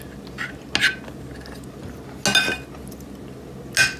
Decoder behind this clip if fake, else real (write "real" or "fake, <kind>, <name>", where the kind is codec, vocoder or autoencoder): real